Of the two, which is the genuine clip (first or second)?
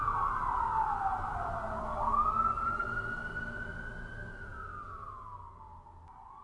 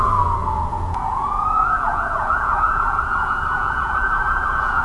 first